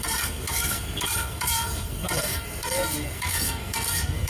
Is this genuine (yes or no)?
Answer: no